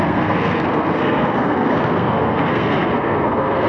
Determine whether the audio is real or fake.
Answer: fake